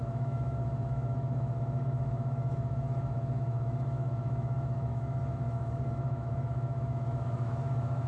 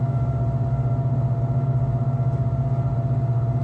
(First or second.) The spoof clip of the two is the first